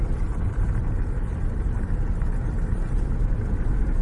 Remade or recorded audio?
remade